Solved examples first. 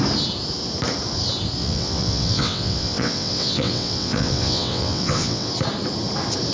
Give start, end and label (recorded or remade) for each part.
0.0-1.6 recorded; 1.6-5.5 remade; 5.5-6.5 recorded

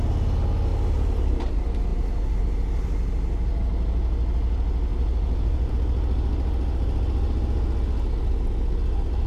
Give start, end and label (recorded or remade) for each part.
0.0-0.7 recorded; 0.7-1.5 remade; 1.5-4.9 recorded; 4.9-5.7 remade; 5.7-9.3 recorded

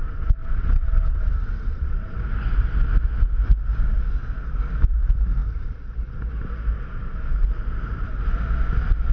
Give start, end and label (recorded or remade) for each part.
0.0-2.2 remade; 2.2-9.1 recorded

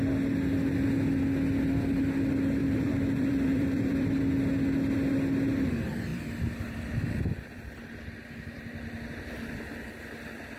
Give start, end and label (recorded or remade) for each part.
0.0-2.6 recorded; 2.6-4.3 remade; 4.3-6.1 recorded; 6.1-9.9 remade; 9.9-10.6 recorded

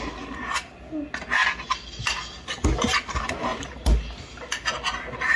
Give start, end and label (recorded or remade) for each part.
0.0-5.4 recorded